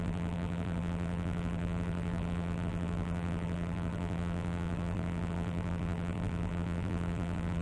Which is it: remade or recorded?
remade